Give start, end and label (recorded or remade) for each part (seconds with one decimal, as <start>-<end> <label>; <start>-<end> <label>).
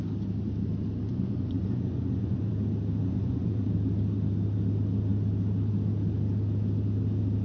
0.0-1.1 recorded; 1.1-2.5 remade; 2.5-3.0 recorded; 3.0-3.7 remade; 3.7-7.4 recorded